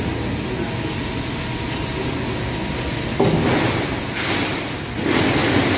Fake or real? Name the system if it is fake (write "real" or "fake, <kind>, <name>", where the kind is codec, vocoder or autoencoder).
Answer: real